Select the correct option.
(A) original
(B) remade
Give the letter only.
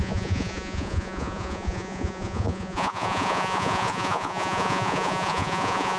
B